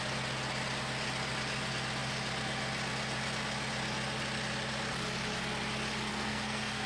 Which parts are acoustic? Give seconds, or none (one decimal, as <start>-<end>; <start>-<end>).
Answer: 0.0-6.1